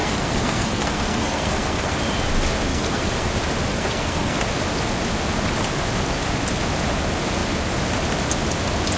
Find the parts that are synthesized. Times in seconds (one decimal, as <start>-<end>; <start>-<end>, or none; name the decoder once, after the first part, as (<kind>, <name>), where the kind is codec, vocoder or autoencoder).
0.0-2.0 (codec, SNAC); 2.7-3.3; 3.7-4.4